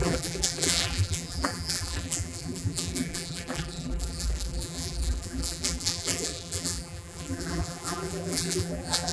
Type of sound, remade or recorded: remade